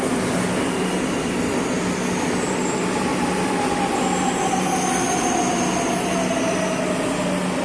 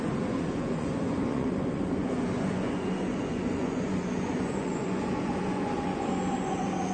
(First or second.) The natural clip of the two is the first